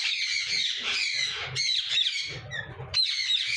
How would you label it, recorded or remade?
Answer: remade